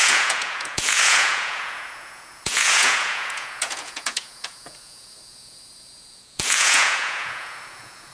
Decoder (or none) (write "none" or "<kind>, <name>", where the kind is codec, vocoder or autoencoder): vocoder, Vocos